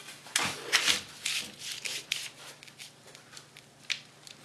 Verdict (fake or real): real